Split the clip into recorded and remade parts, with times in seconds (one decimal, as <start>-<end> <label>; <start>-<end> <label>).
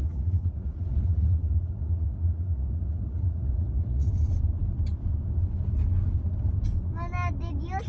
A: 0.0-4.1 remade; 4.1-7.9 recorded